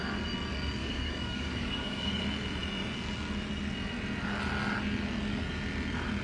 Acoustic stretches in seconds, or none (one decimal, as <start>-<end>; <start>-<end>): 0.0-0.8; 2.2-6.2